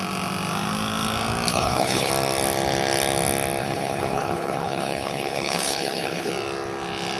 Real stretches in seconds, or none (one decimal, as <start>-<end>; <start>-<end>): 0.0-1.5; 2.1-3.6; 6.3-7.2